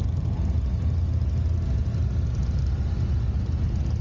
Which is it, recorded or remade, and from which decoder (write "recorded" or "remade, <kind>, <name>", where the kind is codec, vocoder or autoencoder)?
recorded